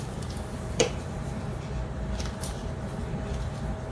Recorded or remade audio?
remade